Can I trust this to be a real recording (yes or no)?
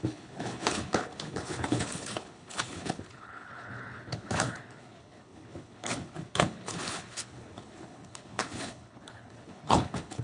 no